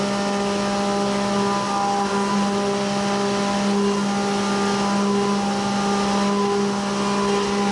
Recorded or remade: recorded